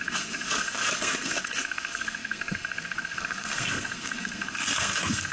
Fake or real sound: fake